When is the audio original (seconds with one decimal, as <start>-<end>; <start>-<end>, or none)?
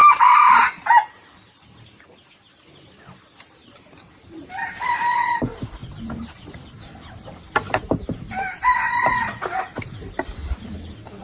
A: 0.0-2.5; 3.6-5.1